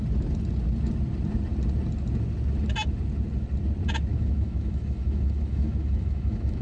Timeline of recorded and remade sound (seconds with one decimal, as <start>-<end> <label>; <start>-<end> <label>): 0.0-4.1 recorded; 4.1-6.6 remade

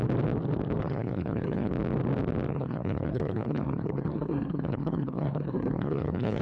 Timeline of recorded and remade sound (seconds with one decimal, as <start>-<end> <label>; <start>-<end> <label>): 0.0-0.8 recorded; 0.8-1.7 remade; 1.7-2.5 recorded; 2.5-6.4 remade

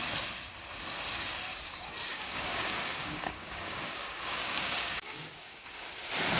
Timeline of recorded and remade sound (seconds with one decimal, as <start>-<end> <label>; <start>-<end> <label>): 0.0-2.1 recorded; 2.1-5.9 remade; 5.9-6.4 recorded

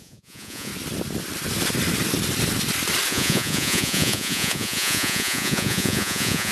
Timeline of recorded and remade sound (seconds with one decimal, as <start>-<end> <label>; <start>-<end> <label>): 0.0-0.7 remade; 0.7-3.1 recorded; 3.1-6.5 remade

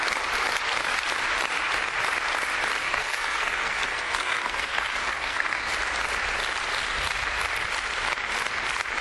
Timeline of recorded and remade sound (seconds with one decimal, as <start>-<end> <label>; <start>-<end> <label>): 0.0-2.8 recorded; 2.8-5.7 remade; 5.7-9.0 recorded

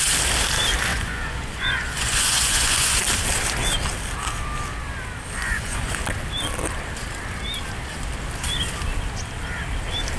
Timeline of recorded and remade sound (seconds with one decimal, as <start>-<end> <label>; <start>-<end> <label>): 0.0-0.9 recorded; 0.9-3.0 remade; 3.0-5.4 recorded; 5.4-6.0 remade; 6.0-10.2 recorded

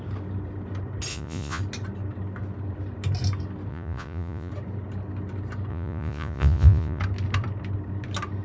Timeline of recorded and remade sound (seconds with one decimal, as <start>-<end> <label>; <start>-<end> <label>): 0.0-1.1 recorded; 1.1-1.6 remade; 1.6-3.7 recorded; 3.7-4.5 remade; 4.5-5.7 recorded; 5.7-7.0 remade; 7.0-8.4 recorded

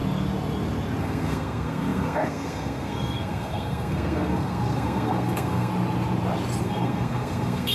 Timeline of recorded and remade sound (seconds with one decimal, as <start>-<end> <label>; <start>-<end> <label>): 0.0-1.0 recorded; 1.0-5.7 remade; 5.7-6.6 recorded; 6.6-7.7 remade